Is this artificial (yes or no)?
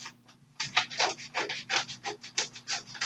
no